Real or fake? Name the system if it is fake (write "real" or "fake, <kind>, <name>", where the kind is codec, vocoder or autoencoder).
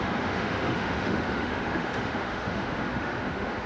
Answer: fake, autoencoder, DAC-VAE